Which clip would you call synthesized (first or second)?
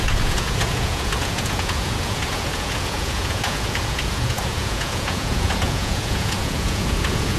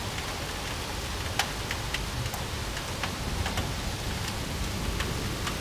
first